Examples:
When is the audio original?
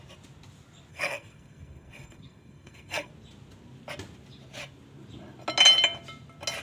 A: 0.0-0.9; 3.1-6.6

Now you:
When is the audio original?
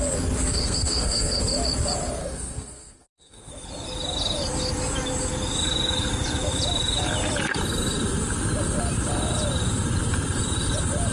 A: 0.0-0.6; 1.4-2.2; 3.5-11.1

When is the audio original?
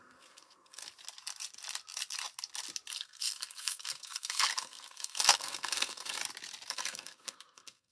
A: 0.8-2.9; 6.2-6.7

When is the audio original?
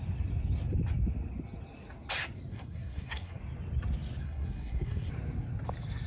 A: 0.0-2.5; 3.4-4.2; 5.1-6.1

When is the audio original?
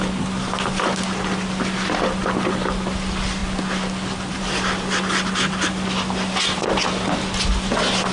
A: 0.0-8.1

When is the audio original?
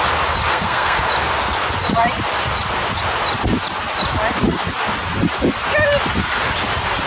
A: 0.0-0.5; 1.0-7.1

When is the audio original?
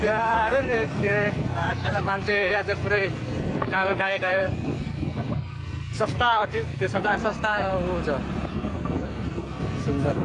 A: 7.7-8.5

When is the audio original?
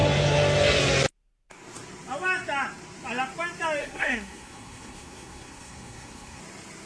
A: 0.0-3.8; 6.4-6.9